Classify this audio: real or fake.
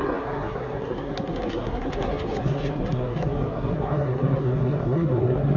fake